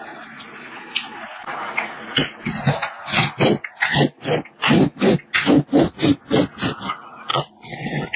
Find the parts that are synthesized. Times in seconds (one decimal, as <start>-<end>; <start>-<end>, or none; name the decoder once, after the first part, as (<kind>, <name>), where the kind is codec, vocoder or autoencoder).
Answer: 7.3-8.2 (vocoder, Vocos)